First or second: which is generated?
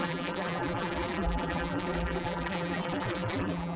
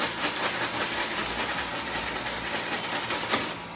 first